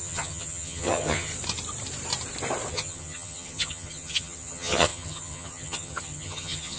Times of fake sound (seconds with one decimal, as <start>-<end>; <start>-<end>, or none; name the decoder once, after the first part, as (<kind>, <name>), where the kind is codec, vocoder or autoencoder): 0.0-1.3 (vocoder, HiFi-GAN); 2.7-6.8

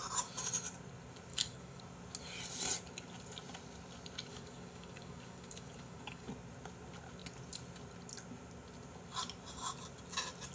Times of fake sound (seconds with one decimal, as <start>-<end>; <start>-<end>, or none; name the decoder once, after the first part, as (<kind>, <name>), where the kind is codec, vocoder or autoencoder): 1.3-1.8 (codec, DAC); 4.3-6.3

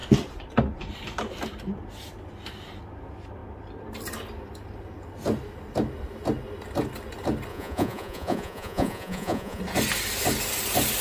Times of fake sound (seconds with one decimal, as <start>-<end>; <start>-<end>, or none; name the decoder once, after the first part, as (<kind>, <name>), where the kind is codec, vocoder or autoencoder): 7.5-9.6 (vocoder, Vocos)

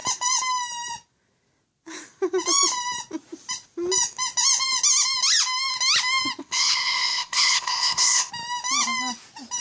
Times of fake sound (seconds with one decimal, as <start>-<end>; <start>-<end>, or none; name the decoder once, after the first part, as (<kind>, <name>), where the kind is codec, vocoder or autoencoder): 6.4-8.3 (codec, ZipCodec)